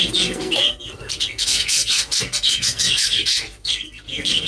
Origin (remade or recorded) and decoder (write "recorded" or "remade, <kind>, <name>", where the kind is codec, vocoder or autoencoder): remade, codec, SNAC